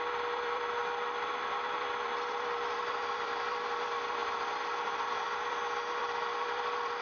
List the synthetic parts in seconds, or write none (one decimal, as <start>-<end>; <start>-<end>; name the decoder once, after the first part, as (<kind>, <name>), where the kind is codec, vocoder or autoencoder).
0.0-7.0 (vocoder, BigVGAN v2)